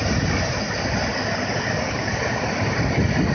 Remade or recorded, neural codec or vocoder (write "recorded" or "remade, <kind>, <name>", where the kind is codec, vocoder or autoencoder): recorded